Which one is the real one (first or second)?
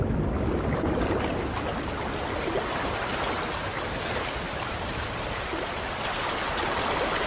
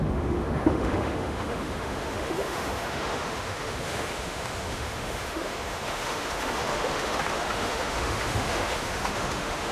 first